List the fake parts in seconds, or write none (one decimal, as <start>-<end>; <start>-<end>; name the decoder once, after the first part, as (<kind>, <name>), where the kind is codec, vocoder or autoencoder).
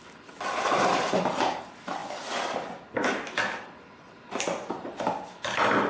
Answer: 0.0-2.0 (vocoder, BigVGAN v2); 4.9-5.9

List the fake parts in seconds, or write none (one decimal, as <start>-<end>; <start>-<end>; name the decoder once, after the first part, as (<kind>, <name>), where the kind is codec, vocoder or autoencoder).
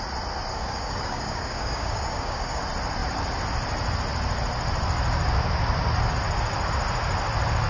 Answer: 0.5-2.6 (codec, DAC)